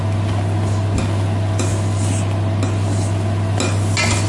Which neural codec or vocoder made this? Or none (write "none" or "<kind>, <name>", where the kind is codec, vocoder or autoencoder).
none